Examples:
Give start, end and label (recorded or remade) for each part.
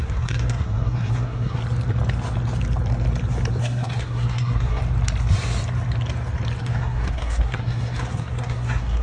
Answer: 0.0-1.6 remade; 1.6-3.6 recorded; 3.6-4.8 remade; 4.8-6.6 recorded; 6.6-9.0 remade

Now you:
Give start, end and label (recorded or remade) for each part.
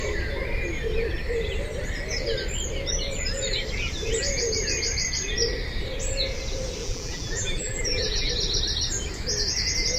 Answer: 0.0-6.8 recorded; 6.8-8.3 remade; 8.3-10.0 recorded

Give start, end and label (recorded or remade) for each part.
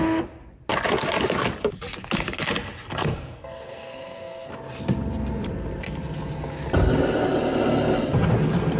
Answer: 0.0-2.9 recorded; 2.9-4.5 remade; 4.5-8.8 recorded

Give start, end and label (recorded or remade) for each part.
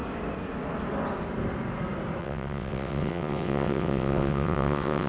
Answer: 0.0-2.2 recorded; 2.2-5.1 remade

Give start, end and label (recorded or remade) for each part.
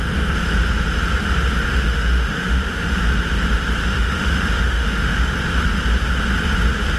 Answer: 0.0-1.7 recorded; 1.7-3.0 remade; 3.0-3.8 recorded; 3.8-5.3 remade; 5.3-7.0 recorded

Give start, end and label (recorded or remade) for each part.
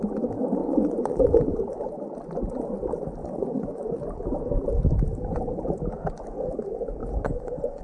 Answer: 0.0-0.6 recorded; 0.6-1.6 remade; 1.6-3.2 recorded; 3.2-3.9 remade; 3.9-7.0 recorded; 7.0-7.8 remade